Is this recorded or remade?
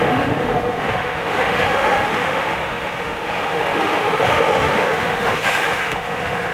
remade